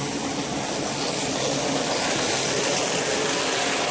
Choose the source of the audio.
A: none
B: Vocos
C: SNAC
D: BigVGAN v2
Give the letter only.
A